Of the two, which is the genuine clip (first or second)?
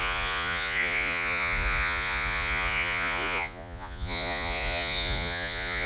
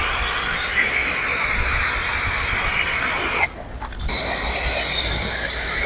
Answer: second